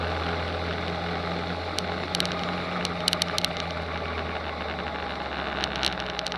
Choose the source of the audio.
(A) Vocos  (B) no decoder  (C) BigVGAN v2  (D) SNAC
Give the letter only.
B